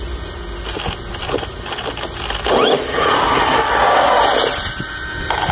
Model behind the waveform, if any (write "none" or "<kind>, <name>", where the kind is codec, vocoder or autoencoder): none